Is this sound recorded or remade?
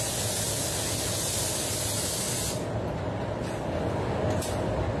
recorded